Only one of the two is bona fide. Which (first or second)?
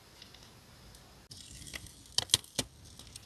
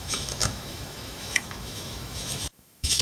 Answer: first